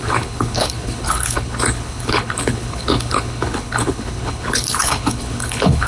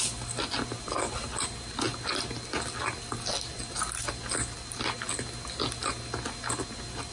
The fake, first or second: first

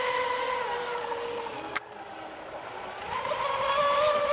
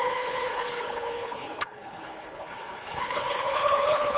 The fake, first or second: second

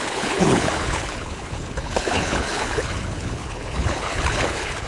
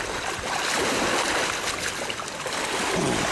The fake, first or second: first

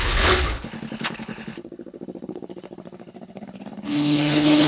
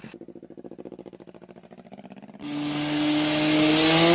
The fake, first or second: first